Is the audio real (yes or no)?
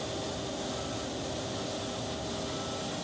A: yes